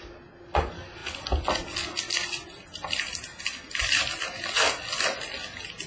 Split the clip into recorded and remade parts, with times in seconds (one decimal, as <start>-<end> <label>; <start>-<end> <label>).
0.0-5.9 recorded